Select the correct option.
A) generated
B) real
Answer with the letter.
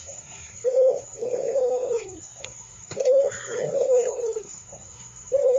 A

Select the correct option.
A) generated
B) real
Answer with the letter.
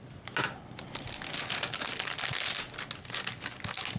B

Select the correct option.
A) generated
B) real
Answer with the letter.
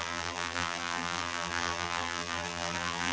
A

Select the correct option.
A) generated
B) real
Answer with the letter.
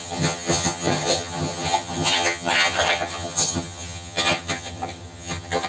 A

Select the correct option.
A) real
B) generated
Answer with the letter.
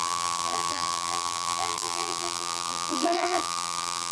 B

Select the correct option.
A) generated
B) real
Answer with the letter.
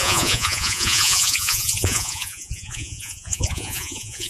A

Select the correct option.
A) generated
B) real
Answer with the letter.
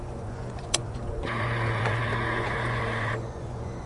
A